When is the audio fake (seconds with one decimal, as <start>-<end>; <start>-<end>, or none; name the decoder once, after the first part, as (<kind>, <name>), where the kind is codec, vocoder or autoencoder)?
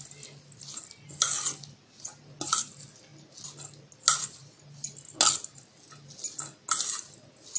none